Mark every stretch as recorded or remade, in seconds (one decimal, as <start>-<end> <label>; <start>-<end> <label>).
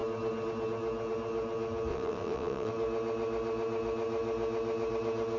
0.0-1.9 recorded; 1.9-2.7 remade; 2.7-5.4 recorded